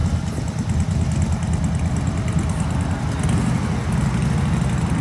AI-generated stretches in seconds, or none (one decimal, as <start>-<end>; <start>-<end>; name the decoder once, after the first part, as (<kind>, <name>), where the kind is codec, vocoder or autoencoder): none